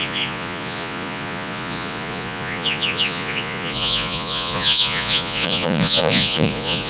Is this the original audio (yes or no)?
no